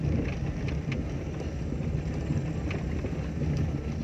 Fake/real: real